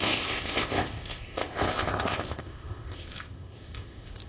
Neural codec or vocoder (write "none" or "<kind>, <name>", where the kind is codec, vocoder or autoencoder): codec, ZipCodec